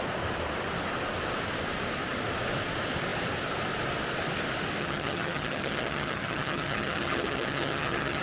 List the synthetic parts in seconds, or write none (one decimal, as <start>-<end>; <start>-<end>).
4.8-8.2